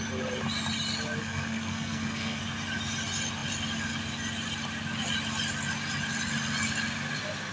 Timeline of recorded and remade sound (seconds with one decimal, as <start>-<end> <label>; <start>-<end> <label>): 0.0-1.2 recorded; 1.2-2.4 remade; 2.4-7.5 recorded